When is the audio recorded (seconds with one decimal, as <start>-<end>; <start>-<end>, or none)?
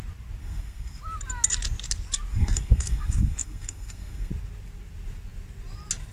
0.0-0.4; 1.0-2.3; 4.3-6.1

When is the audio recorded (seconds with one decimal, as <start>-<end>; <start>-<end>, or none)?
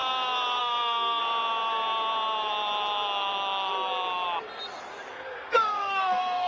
0.0-0.6; 1.2-5.1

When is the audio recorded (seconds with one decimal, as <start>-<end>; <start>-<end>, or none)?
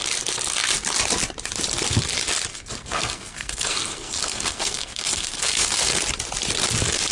0.0-2.5; 6.0-7.1